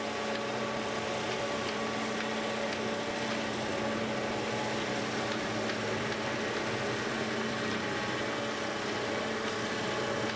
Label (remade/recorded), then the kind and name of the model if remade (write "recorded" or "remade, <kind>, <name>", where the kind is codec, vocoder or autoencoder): recorded